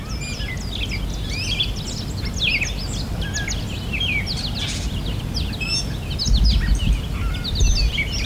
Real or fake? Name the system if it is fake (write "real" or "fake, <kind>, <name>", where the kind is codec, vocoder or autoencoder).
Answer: real